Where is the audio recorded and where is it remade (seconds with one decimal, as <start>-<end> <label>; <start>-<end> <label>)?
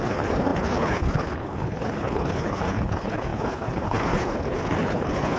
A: 0.0-5.4 remade